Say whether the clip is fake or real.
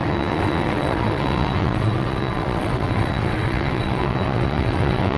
fake